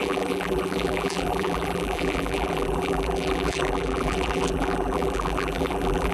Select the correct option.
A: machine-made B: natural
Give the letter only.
A